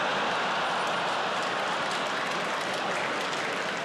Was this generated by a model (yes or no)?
no